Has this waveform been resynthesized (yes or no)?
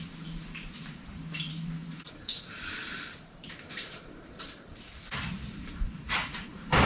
yes